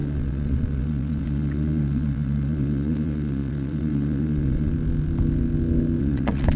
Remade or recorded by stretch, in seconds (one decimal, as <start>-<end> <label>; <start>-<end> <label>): 0.0-4.7 remade; 4.7-6.0 recorded; 6.0-6.6 remade